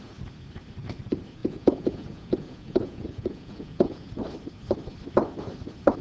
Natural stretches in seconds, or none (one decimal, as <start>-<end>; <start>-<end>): 0.0-1.4; 4.1-6.0